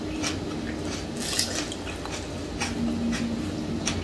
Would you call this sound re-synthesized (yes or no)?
no